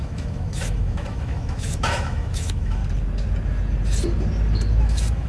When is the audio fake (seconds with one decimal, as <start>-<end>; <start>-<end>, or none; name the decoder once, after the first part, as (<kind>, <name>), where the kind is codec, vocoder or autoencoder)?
0.0-2.8 (autoencoder, DAC-VAE); 4.8-5.3